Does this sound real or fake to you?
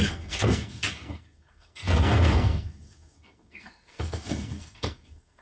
fake